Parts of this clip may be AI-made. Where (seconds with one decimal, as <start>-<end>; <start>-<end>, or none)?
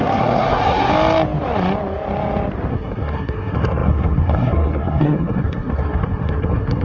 0.0-0.9; 2.7-6.8